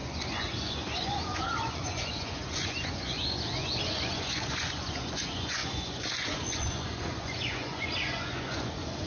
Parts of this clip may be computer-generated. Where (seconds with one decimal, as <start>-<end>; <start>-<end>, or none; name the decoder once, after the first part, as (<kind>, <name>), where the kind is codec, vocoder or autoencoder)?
0.0-9.1 (vocoder, Vocos)